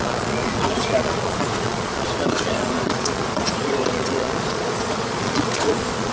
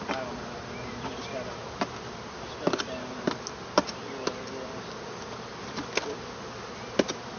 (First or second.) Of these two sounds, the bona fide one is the second